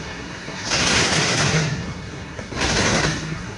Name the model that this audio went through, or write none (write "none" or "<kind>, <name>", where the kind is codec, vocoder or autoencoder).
codec, SNAC